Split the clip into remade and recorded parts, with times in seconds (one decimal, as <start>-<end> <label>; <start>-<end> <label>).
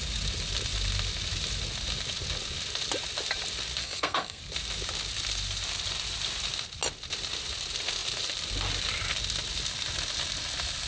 0.0-3.8 recorded; 3.8-4.4 remade; 4.4-10.9 recorded